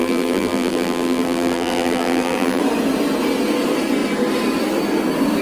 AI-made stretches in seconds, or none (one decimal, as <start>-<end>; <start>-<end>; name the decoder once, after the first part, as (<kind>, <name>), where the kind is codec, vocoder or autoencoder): 0.0-2.6 (vocoder, BigVGAN v2)